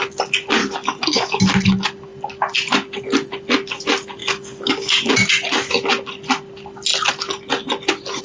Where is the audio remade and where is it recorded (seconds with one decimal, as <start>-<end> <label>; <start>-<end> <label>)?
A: 0.0-0.6 recorded; 0.6-1.4 remade; 1.4-4.2 recorded; 4.2-5.1 remade; 5.1-8.2 recorded